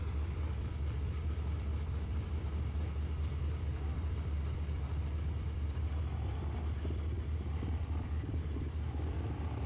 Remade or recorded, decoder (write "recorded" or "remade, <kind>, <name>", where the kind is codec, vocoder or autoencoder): remade, vocoder, BigVGAN v2